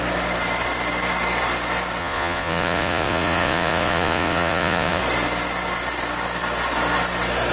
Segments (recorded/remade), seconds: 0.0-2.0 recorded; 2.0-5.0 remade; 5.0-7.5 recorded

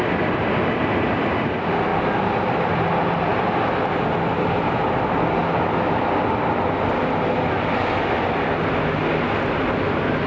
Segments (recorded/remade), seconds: 0.0-10.3 recorded

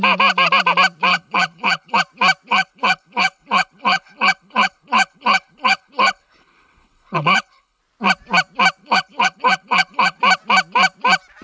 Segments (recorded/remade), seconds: 0.0-1.1 recorded; 1.1-2.0 remade; 2.0-2.5 recorded; 2.5-7.8 remade; 7.8-8.8 recorded; 8.8-10.2 remade; 10.2-11.4 recorded

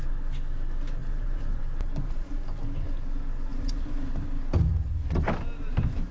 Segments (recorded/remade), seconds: 0.0-1.0 recorded; 1.0-1.6 remade; 1.6-3.5 recorded; 3.5-4.1 remade; 4.1-6.1 recorded

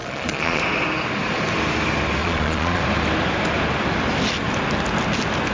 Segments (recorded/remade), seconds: 0.0-0.6 remade; 0.6-2.2 recorded; 2.2-2.8 remade; 2.8-5.5 recorded